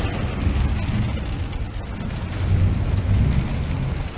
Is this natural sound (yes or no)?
yes